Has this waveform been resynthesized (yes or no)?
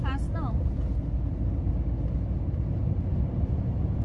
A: no